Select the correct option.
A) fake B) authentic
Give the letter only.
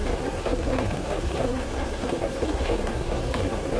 A